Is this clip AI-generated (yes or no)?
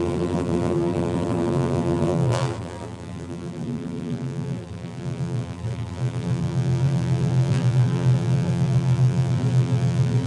yes